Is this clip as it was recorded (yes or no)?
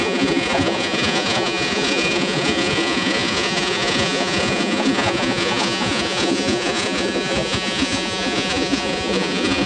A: no